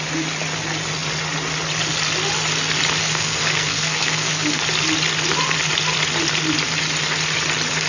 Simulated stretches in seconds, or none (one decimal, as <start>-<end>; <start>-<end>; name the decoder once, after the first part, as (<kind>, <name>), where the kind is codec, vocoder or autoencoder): 3.0-4.6 (codec, SNAC)